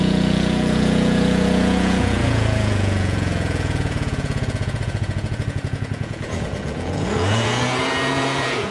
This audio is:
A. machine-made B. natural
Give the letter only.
A